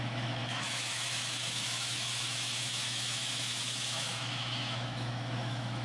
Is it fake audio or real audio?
fake